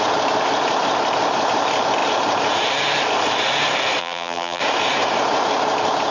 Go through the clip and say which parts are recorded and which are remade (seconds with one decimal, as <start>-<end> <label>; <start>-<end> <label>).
0.0-4.0 recorded; 4.0-4.6 remade; 4.6-6.1 recorded